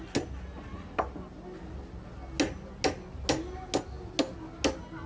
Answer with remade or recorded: recorded